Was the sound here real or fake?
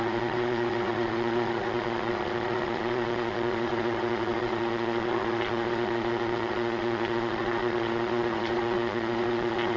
fake